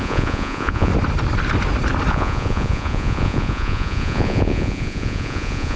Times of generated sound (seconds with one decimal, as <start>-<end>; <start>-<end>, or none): 0.0-0.9; 2.1-5.8